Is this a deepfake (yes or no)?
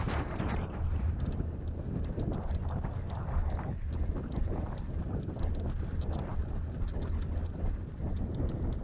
no